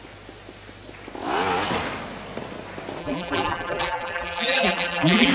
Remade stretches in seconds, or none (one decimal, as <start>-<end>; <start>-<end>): 3.0-5.3